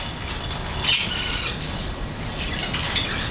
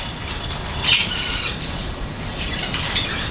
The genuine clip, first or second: first